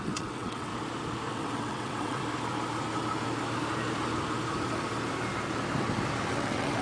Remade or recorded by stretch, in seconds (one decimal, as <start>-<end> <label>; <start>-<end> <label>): 0.0-0.7 remade; 0.7-1.3 recorded; 1.3-2.2 remade; 2.2-6.3 recorded; 6.3-6.8 remade